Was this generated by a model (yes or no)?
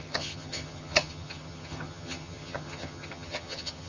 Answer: yes